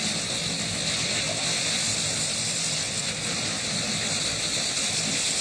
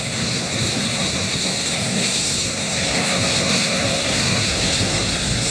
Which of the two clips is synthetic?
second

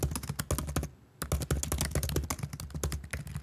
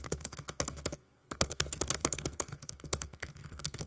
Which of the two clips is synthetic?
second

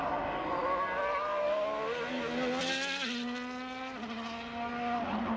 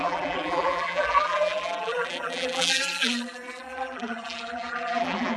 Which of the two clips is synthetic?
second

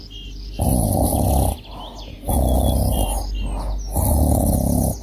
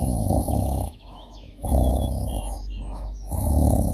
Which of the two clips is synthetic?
second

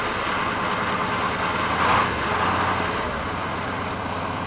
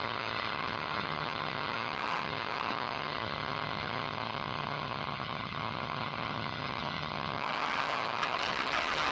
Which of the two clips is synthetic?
second